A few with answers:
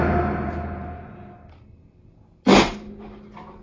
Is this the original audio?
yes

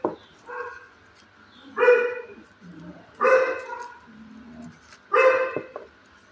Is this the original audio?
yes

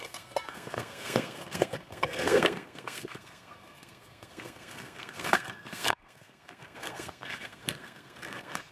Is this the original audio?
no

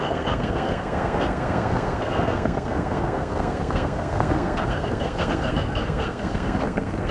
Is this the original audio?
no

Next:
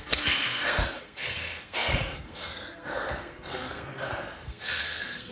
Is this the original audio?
no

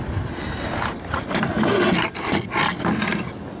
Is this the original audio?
yes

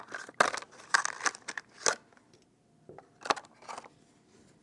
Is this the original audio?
yes